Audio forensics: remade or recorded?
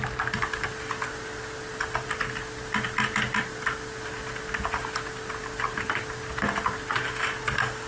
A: recorded